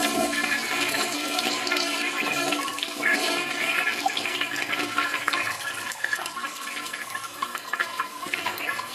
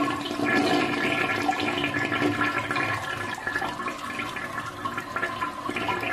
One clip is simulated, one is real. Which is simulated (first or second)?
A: first